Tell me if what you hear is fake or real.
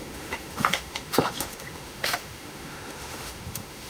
fake